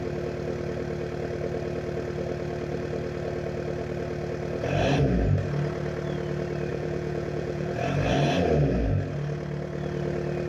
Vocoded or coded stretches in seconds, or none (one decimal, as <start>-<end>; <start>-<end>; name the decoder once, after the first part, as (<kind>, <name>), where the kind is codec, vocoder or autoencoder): 6.7-7.7 (vocoder, Vocos)